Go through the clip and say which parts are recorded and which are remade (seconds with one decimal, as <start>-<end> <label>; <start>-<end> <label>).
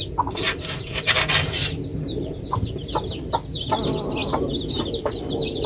0.0-1.9 recorded; 1.9-2.7 remade; 2.7-5.7 recorded